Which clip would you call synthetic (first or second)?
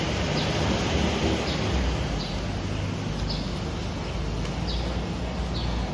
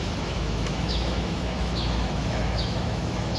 second